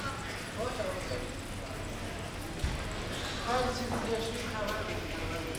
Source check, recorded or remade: recorded